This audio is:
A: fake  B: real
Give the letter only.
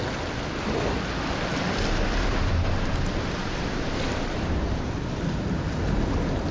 B